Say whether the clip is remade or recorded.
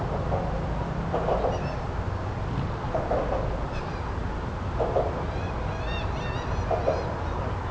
recorded